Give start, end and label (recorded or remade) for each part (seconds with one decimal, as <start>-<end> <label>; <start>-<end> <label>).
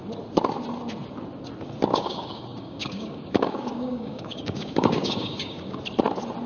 0.0-1.9 recorded; 1.9-5.8 remade; 5.8-6.5 recorded